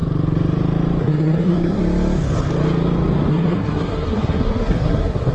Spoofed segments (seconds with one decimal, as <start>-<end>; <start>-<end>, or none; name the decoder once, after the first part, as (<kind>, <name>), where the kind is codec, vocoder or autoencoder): 1.0-1.8 (codec, SNAC); 3.3-5.3